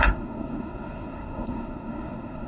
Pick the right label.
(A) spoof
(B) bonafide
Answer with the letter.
A